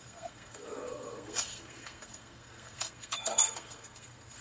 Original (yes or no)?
no